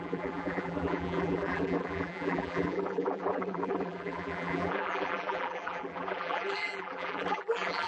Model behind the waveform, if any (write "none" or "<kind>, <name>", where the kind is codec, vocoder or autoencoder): vocoder, BigVGAN v2